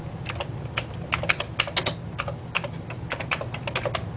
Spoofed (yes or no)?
no